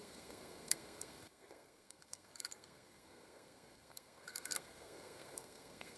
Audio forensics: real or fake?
fake